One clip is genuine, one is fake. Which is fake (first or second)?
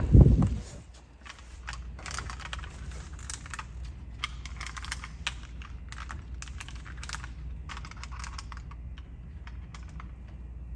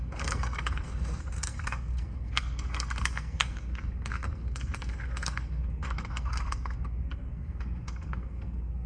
second